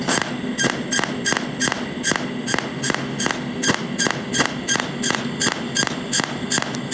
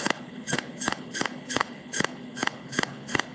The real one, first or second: first